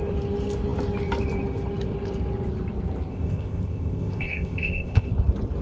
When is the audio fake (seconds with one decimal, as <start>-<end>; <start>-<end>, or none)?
3.1-5.1